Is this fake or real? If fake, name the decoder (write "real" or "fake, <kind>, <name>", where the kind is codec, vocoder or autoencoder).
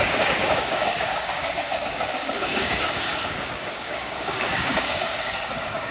fake, codec, DAC